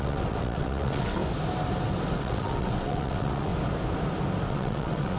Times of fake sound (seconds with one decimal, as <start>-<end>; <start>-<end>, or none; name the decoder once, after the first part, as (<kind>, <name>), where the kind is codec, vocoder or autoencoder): 0.0-1.2 (vocoder, WaveNeXt); 2.1-3.5; 4.5-5.2